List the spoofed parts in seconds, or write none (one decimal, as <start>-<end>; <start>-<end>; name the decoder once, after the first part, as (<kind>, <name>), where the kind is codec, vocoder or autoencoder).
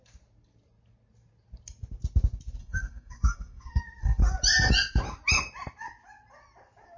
2.6-4.2 (codec, SNAC)